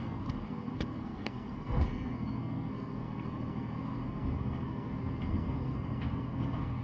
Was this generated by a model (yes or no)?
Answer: yes